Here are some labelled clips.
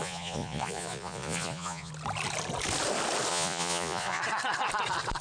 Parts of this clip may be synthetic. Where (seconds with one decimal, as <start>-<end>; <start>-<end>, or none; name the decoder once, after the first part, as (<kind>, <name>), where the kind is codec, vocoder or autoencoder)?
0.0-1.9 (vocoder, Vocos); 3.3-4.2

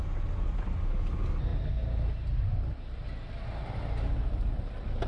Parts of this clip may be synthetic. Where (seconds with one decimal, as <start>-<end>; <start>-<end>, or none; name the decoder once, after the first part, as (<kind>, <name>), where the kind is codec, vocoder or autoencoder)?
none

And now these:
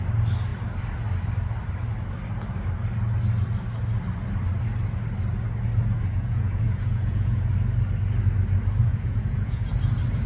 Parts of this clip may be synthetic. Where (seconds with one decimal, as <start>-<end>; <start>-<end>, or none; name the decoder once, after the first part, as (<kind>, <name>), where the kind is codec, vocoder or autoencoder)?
6.1-7.5 (vocoder, Vocos); 8.9-9.7

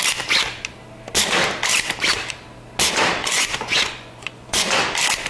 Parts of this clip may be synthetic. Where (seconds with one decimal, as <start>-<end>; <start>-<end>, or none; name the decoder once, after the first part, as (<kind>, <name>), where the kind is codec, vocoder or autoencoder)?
3.2-4.8 (vocoder, Vocos)